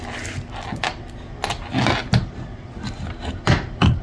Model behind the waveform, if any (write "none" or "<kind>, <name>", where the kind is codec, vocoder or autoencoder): none